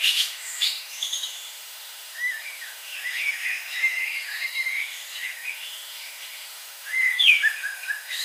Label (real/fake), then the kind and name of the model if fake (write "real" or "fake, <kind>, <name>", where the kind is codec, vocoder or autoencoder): fake, autoencoder, DAC-VAE